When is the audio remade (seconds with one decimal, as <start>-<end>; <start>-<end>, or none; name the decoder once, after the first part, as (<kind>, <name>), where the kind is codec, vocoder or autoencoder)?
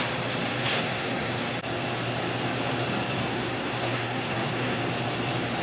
0.6-1.4 (codec, SNAC); 3.2-4.8